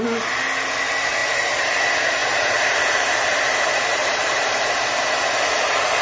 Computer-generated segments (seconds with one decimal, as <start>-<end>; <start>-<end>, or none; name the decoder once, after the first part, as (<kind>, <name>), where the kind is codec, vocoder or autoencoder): 1.2-1.8 (vocoder, BigVGAN v2); 2.2-6.0